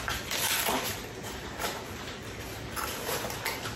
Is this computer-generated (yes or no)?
no